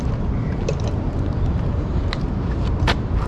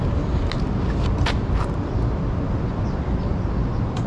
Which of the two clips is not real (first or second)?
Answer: first